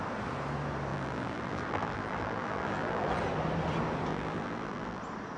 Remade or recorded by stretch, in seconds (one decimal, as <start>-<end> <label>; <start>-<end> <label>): 0.0-0.9 recorded; 0.9-3.2 remade; 3.2-4.1 recorded; 4.1-5.0 remade; 5.0-5.4 recorded